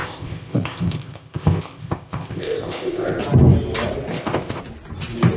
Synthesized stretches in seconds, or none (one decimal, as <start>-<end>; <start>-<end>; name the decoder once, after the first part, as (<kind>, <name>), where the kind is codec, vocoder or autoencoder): 0.0-3.2 (codec, ZipCodec); 4.1-4.6